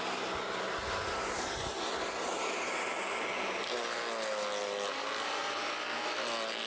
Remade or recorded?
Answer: recorded